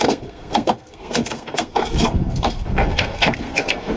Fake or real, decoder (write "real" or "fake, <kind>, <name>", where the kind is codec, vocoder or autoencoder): fake, codec, SNAC